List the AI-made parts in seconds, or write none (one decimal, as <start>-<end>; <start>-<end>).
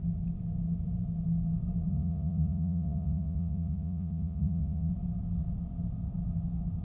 1.9-4.9